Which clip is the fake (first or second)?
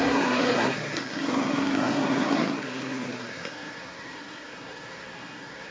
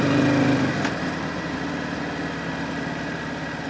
first